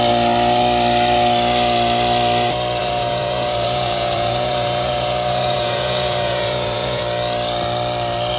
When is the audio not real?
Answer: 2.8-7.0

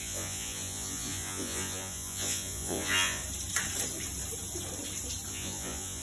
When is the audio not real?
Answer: 0.0-3.2; 5.3-6.0

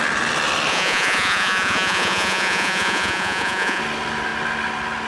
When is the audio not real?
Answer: 0.7-3.8